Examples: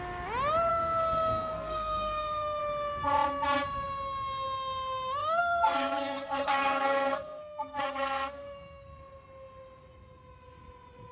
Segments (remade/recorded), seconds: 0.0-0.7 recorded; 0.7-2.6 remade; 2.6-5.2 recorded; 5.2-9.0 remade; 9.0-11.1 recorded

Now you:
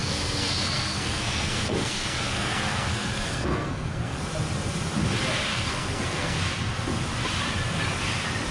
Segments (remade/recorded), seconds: 0.0-4.2 remade; 4.2-5.5 recorded; 5.5-6.4 remade; 6.4-8.5 recorded

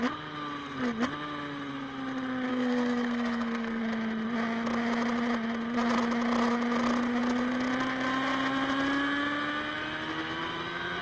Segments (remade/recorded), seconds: 0.0-2.5 recorded; 2.5-3.8 remade; 3.8-11.0 recorded

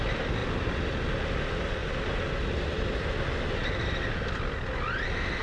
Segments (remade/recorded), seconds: 0.0-5.4 recorded

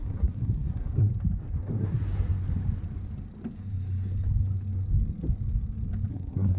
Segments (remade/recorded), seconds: 0.0-1.1 remade; 1.1-1.8 recorded; 1.8-2.4 remade; 2.4-6.1 recorded; 6.1-6.6 remade

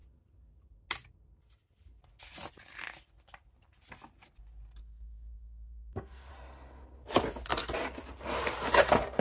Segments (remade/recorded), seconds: 0.0-4.8 recorded; 4.8-6.3 remade; 6.3-9.2 recorded

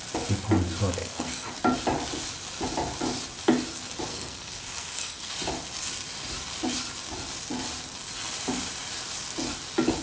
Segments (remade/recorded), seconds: 0.0-1.0 recorded; 1.0-1.5 remade; 1.5-4.1 recorded; 4.1-5.3 remade; 5.3-10.0 recorded